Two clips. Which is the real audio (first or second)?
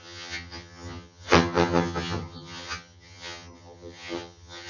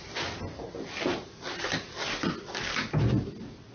second